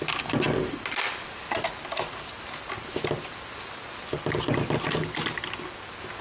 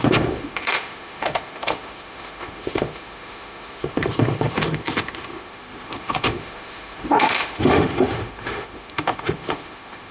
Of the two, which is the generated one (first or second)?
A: second